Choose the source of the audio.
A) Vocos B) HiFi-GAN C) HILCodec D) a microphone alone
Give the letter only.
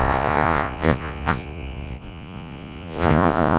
A